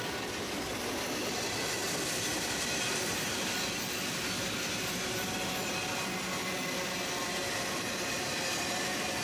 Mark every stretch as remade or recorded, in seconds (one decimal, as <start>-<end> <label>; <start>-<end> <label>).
0.0-9.2 recorded